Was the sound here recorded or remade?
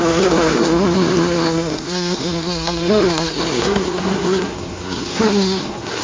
remade